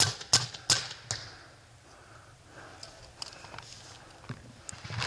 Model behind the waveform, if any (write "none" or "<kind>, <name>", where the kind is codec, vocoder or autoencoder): none